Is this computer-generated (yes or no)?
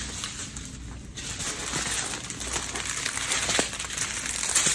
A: no